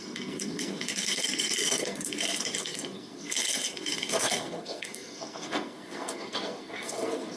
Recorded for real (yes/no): no